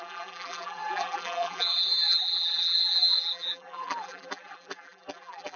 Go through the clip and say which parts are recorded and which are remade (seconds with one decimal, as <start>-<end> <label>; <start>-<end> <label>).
0.0-5.6 remade